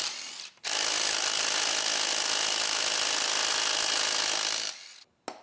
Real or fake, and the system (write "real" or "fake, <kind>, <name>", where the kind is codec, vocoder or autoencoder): real